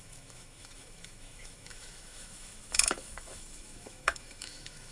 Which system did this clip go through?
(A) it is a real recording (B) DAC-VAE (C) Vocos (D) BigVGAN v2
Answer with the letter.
B